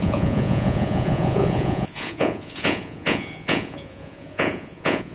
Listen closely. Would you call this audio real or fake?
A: fake